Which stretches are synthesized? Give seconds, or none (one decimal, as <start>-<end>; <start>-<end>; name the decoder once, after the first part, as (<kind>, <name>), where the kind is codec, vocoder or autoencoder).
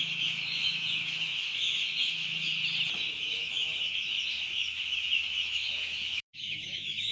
0.0-2.5 (autoencoder, DAC-VAE); 3.2-7.1